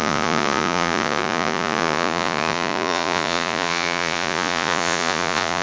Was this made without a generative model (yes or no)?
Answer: no